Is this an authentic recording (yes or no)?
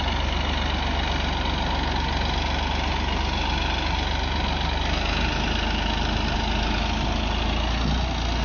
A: yes